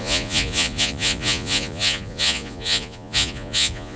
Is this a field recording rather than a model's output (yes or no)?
no